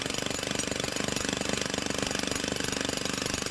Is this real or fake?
real